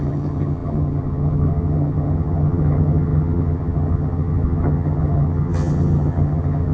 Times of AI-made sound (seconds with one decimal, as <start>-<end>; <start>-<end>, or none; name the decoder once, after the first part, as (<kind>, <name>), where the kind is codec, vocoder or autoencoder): 0.0-6.7 (vocoder, HiFi-GAN)